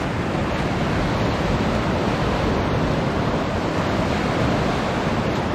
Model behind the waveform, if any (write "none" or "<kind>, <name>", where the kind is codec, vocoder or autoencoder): vocoder, BigVGAN v2